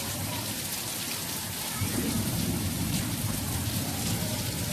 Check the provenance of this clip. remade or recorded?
remade